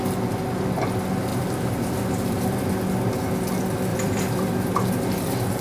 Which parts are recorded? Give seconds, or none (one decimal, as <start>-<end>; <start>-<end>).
0.0-1.3; 2.7-3.9; 4.9-5.6